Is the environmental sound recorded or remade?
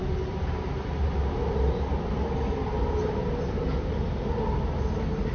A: recorded